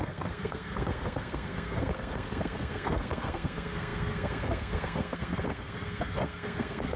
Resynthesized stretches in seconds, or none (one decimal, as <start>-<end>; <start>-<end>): 0.0-7.0